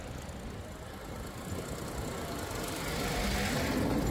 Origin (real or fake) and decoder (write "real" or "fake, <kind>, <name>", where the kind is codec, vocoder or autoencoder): real